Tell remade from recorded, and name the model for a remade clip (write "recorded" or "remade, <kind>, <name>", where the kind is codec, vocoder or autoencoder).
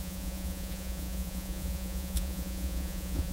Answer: remade, vocoder, Vocos